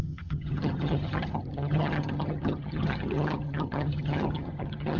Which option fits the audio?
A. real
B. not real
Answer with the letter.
B